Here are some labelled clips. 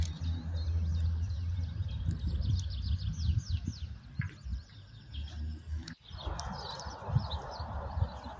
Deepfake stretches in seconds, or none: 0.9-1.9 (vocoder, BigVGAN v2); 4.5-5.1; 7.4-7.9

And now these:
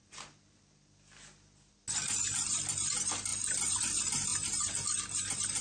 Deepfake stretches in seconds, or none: none

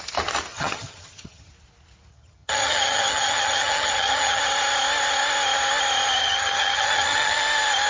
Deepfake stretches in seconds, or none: 0.5-1.5 (vocoder, HiFi-GAN); 2.1-4.4; 6.2-7.4

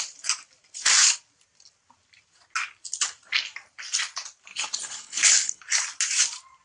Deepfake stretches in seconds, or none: 4.5-5.6 (codec, HILCodec)

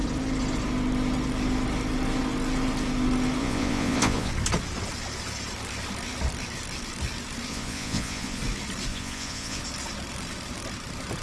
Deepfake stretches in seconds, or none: 3.4-4.3 (vocoder, Vocos); 7.5-8.4; 8.9-9.6

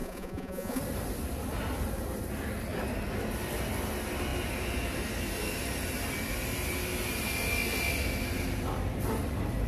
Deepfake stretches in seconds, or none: 0.0-0.8 (vocoder, Vocos)

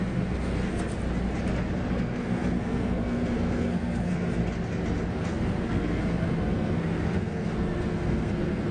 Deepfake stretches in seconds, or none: 0.0-0.9 (codec, SNAC); 1.9-4.4; 5.1-8.7

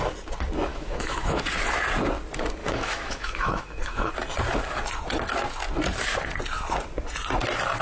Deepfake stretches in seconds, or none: 0.7-1.4 (autoencoder, DAC-VAE); 2.6-4.1